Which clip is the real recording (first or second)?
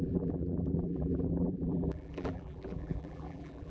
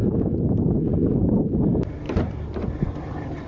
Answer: second